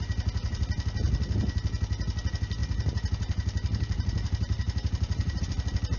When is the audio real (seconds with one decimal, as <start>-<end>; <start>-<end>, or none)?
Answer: 0.0-2.6; 5.4-6.0